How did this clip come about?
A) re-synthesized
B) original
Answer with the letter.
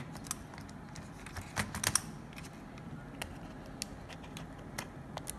B